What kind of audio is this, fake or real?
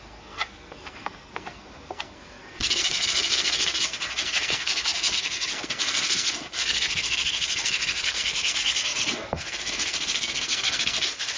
fake